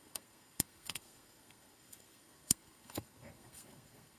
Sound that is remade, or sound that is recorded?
remade